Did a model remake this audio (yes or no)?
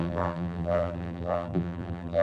yes